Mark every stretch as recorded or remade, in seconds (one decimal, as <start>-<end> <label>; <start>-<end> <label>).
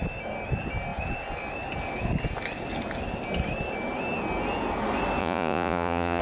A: 0.0-5.2 recorded; 5.2-6.2 remade